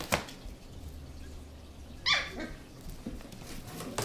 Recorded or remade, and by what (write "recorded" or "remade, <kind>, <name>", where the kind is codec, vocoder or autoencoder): recorded